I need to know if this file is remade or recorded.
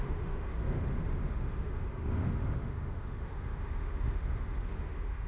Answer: remade